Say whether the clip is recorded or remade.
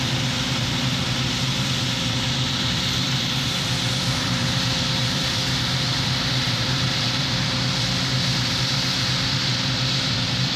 remade